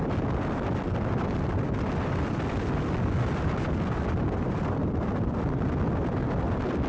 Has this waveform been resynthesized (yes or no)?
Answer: no